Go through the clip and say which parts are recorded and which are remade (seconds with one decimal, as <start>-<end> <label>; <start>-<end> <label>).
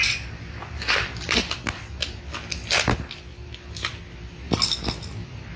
0.0-5.6 recorded